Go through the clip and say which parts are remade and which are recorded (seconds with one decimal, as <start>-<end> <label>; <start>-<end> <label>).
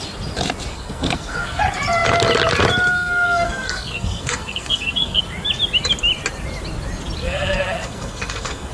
0.0-0.7 recorded; 0.7-1.6 remade; 1.6-2.9 recorded; 2.9-5.2 remade; 5.2-7.2 recorded; 7.2-8.7 remade